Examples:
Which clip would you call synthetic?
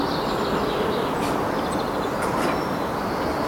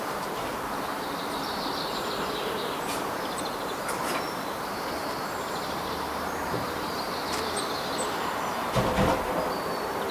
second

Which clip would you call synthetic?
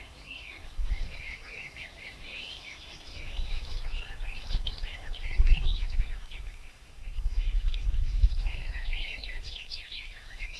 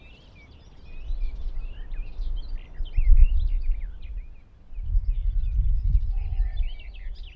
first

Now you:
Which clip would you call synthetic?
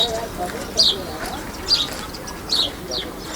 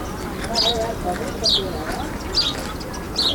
first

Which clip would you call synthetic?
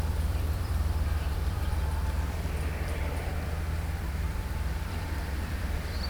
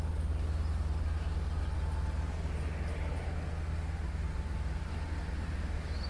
first